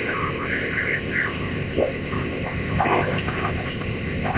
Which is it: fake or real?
fake